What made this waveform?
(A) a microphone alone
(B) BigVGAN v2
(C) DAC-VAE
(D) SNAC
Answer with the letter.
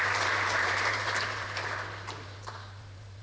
B